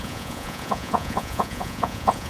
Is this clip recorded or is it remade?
remade